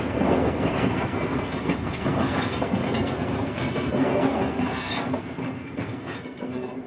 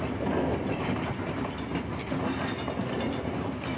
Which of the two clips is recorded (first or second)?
second